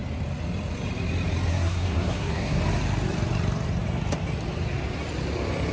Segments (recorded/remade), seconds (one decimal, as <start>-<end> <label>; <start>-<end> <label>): 0.0-1.5 recorded; 1.5-2.6 remade; 2.6-5.7 recorded